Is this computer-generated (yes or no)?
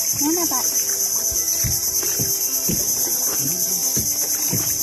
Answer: no